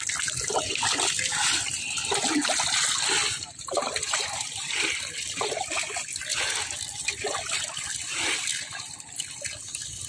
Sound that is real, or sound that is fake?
real